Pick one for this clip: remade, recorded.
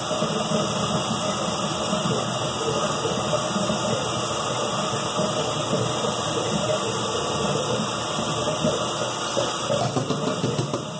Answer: recorded